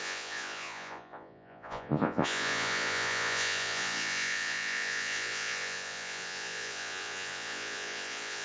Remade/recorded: remade